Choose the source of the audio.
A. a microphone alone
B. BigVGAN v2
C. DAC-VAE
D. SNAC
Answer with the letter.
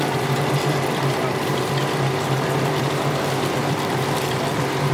B